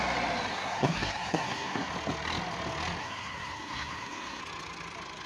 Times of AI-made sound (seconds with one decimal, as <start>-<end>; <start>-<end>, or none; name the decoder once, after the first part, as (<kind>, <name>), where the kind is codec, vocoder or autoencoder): 0.5-1.9 (codec, SNAC); 3.0-4.4